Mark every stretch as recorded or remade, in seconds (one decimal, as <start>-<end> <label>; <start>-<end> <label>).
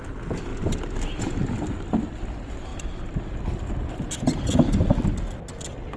0.0-6.0 recorded